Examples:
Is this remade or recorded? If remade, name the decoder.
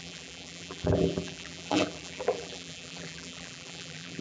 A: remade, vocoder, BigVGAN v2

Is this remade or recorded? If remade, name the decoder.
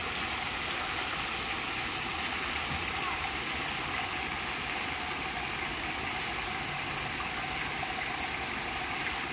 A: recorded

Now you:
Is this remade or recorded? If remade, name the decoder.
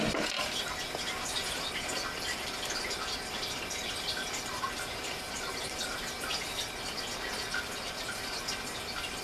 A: remade, vocoder, BigVGAN v2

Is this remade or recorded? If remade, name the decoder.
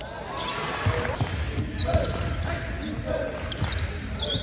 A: recorded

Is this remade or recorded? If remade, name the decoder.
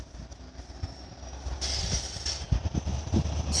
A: remade, vocoder, BigVGAN v2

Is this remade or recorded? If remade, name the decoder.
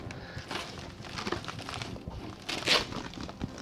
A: recorded